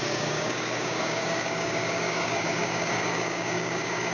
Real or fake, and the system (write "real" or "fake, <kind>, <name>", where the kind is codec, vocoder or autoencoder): fake, codec, DAC